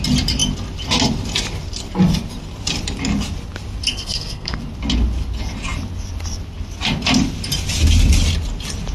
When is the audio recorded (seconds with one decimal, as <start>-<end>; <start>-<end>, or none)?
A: 0.0-3.9; 4.6-8.9